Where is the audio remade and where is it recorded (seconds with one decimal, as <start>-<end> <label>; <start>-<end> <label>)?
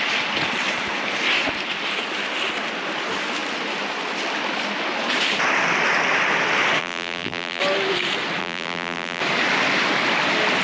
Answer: 0.0-6.8 recorded; 6.8-7.6 remade; 7.6-8.4 recorded; 8.4-9.2 remade; 9.2-10.6 recorded